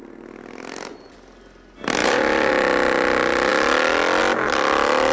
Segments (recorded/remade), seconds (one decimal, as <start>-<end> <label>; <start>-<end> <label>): 0.0-2.0 recorded; 2.0-2.5 remade; 2.5-5.1 recorded